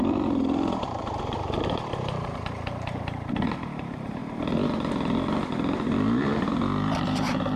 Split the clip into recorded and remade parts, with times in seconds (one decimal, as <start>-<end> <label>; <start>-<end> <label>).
0.0-4.2 remade; 4.2-7.0 recorded; 7.0-7.6 remade

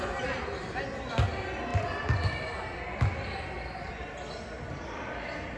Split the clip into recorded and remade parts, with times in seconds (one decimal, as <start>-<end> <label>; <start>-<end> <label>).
0.0-5.6 recorded